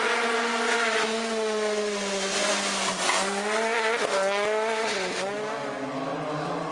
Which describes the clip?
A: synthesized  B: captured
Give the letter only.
B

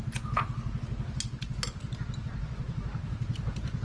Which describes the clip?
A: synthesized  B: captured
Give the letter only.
B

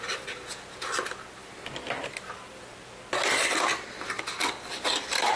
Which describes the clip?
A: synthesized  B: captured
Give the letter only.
B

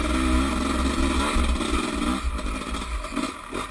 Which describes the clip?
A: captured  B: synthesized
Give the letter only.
A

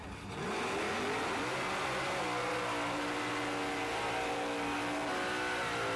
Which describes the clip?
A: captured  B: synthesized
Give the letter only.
A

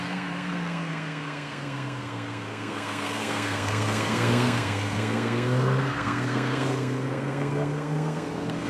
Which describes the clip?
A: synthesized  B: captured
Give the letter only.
A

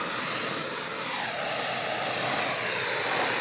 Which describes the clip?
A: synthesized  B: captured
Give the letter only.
B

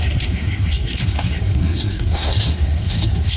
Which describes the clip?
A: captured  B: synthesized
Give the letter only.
B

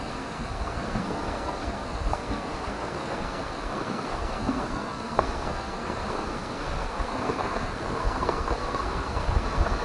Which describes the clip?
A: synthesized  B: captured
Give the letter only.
A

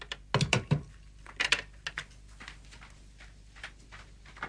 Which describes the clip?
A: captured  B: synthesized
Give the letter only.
A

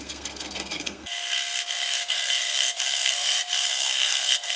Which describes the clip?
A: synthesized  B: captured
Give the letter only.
A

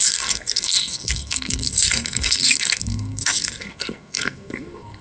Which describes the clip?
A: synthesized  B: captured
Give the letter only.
A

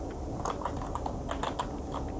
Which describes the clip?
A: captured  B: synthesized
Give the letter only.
A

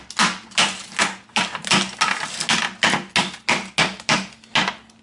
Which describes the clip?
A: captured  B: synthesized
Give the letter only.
A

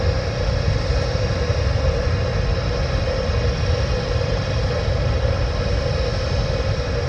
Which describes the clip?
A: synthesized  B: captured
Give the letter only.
B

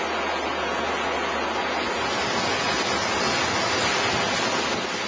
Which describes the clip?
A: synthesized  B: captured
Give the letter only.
B